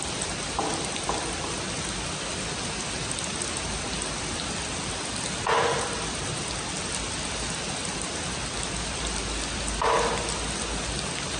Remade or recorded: recorded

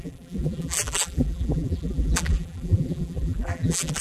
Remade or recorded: remade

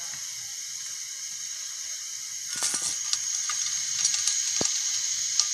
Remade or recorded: recorded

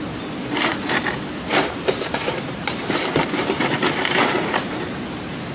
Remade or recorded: remade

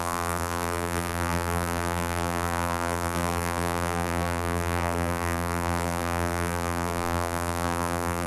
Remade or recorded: remade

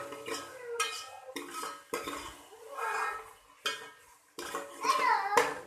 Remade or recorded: recorded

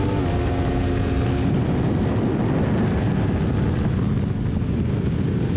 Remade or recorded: recorded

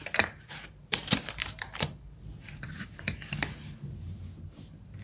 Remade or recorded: remade